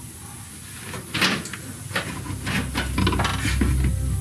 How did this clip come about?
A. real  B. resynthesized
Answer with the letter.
A